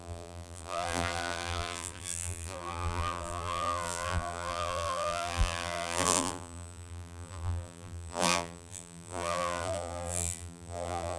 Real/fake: fake